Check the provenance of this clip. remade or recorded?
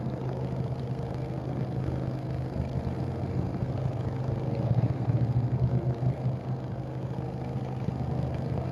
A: remade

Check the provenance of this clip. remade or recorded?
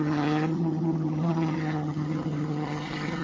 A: remade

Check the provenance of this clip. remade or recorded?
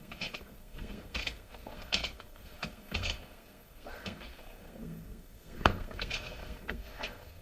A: remade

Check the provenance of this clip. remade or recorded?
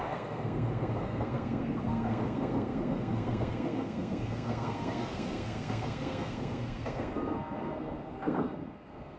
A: remade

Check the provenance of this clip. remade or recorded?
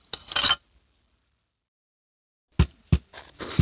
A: recorded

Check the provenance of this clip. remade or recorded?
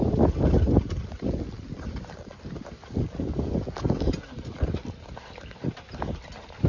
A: recorded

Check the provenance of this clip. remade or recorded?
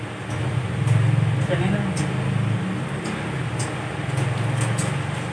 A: recorded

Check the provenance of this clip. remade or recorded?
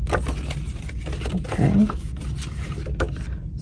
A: recorded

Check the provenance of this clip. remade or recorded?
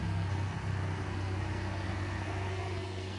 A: remade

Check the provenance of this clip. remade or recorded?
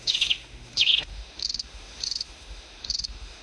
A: remade